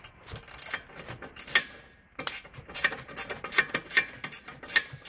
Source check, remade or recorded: recorded